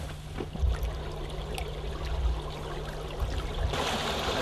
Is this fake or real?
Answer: real